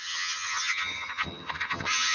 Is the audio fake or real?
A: fake